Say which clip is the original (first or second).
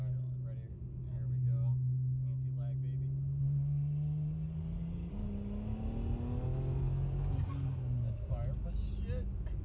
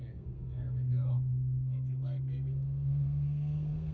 first